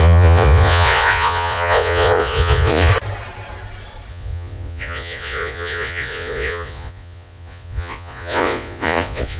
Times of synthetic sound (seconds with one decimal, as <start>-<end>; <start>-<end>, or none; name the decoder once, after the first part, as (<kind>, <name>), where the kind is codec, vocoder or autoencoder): 0.0-2.9 (vocoder, Vocos); 4.1-9.4